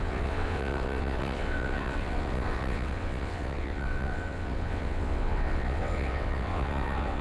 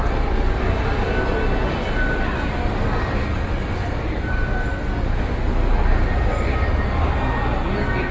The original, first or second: second